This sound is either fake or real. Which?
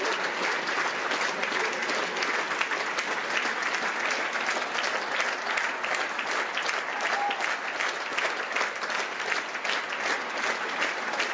real